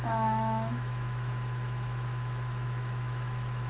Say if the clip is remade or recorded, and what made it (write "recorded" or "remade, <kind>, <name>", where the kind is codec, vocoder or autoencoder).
remade, autoencoder, DAC-VAE